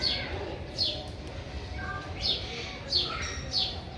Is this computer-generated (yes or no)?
no